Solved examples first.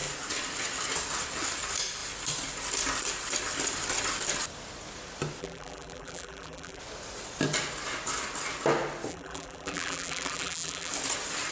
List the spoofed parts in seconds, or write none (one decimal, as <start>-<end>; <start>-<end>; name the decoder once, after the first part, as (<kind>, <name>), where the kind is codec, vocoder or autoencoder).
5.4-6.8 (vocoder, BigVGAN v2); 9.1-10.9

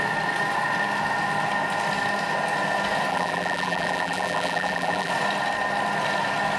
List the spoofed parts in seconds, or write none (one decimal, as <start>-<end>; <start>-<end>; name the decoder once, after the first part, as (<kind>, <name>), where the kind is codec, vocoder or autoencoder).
3.1-5.1 (vocoder, BigVGAN v2)

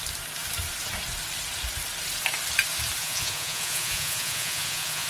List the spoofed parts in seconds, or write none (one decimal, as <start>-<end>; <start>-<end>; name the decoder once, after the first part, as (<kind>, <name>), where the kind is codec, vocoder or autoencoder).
3.0-5.1 (vocoder, Vocos)

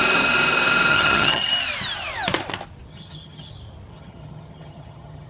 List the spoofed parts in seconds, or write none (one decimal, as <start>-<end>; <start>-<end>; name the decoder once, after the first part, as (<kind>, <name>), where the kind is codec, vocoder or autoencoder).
0.9-1.5 (vocoder, HiFi-GAN); 2.9-3.5; 3.9-5.3